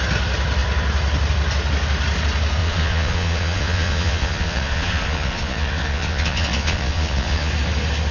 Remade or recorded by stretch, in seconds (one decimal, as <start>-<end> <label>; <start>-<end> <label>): 0.0-2.6 recorded; 2.6-7.5 remade; 7.5-8.1 recorded